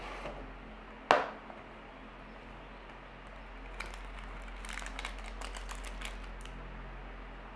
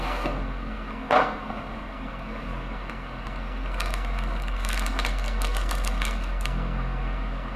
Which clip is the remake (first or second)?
second